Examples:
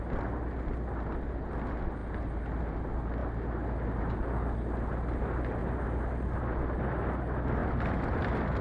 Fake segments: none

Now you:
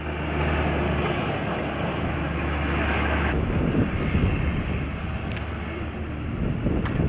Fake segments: 1.9-3.5 (autoencoder, DAC-VAE)

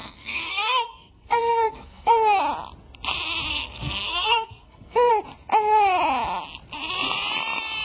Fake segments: 0.0-2.4 (codec, SNAC); 3.5-5.1

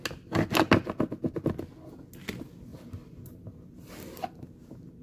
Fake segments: 2.7-4.5 (vocoder, BigVGAN v2)